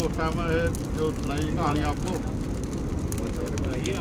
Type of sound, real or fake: real